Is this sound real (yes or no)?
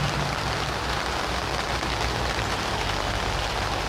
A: yes